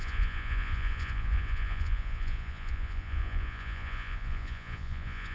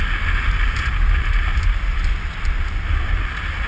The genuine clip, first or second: second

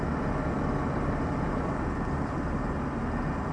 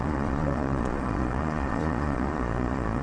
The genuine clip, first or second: first